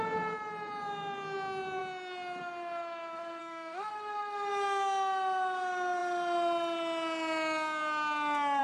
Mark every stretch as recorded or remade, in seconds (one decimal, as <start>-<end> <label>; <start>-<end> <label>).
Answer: 0.0-3.4 recorded; 3.4-3.9 remade; 3.9-8.6 recorded